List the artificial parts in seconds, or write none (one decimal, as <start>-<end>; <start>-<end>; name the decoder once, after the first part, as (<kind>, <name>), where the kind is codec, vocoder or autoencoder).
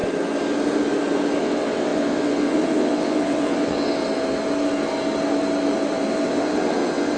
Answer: 1.4-4.0 (vocoder, WaveNeXt); 6.1-7.2